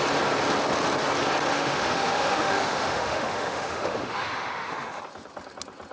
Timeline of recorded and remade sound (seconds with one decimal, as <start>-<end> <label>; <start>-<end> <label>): 0.0-1.5 recorded; 1.5-5.0 remade; 5.0-5.9 recorded

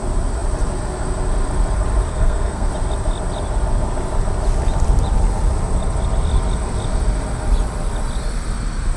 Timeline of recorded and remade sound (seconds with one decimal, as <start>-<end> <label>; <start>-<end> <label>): 0.0-2.1 recorded; 2.1-2.7 remade; 2.7-9.0 recorded